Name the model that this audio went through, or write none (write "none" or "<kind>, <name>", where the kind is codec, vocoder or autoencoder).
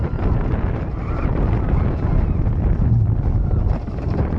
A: none